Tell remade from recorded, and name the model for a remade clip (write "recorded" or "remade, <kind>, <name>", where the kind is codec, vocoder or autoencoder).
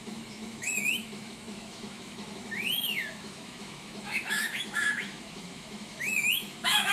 remade, autoencoder, DAC-VAE